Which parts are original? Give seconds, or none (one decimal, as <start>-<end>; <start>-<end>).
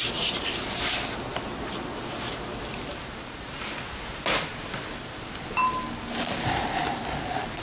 4.5-6.3